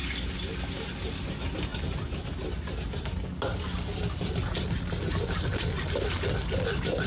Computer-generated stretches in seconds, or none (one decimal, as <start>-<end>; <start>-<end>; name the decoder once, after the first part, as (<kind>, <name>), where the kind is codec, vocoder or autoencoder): none